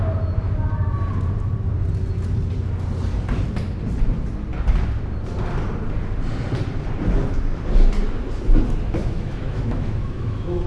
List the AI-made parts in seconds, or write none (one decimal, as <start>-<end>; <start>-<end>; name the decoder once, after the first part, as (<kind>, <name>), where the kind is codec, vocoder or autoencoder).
9.0-10.7 (autoencoder, DAC-VAE)